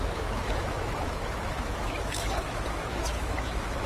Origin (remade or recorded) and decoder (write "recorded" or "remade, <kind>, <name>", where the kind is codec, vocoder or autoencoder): remade, autoencoder, DAC-VAE